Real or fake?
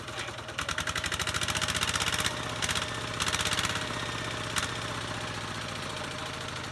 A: real